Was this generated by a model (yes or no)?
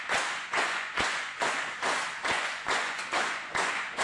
yes